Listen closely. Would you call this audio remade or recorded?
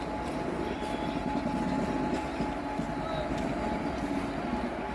recorded